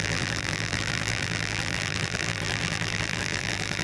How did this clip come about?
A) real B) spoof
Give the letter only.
B